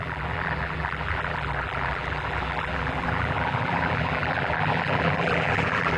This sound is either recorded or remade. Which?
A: remade